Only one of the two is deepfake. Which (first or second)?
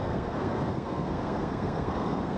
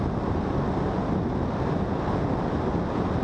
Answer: first